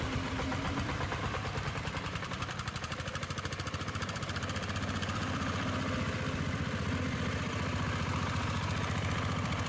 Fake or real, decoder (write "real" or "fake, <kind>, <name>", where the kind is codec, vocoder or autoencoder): fake, vocoder, BigVGAN v2